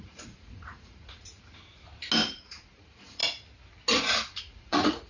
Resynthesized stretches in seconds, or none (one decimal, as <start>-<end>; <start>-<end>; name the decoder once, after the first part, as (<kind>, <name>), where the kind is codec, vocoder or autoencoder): 0.0-1.6 (vocoder, Vocos); 2.3-3.2; 4.4-5.1